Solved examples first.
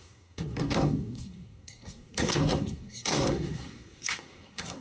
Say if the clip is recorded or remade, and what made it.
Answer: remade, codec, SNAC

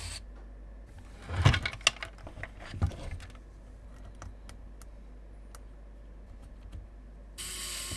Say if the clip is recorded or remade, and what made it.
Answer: recorded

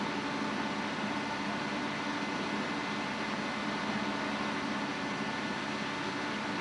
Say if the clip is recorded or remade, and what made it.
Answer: recorded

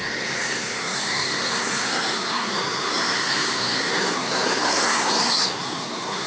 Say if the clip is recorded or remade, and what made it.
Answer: remade, codec, SNAC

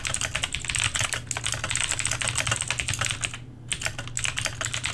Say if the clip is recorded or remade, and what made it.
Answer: recorded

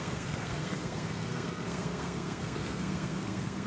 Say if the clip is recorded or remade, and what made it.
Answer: remade, codec, SNAC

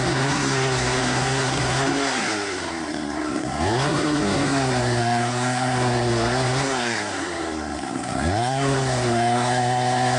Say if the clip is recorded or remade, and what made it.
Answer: remade, codec, SNAC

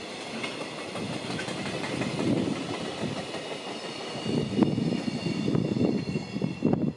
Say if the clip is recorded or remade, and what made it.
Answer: recorded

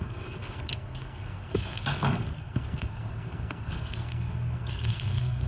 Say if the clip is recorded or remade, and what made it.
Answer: remade, codec, SNAC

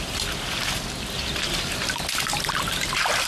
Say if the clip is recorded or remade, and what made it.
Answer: recorded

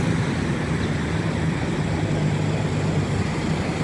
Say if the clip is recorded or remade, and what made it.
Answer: recorded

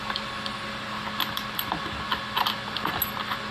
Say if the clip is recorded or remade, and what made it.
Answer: recorded